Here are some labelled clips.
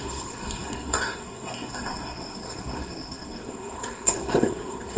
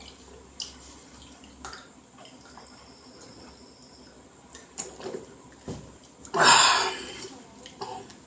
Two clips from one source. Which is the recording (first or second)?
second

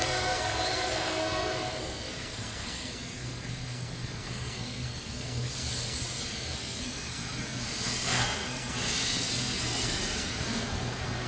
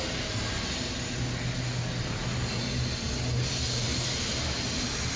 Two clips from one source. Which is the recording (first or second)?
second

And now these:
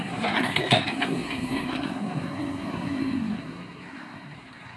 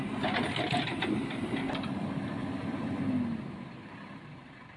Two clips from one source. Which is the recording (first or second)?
second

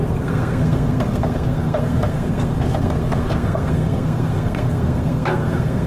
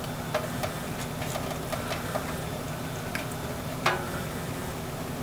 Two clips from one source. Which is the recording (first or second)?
second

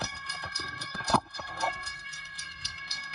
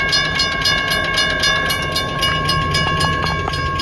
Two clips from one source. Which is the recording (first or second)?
second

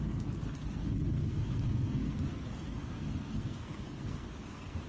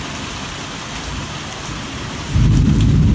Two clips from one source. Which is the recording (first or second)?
second